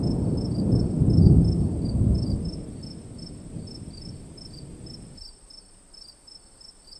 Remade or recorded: recorded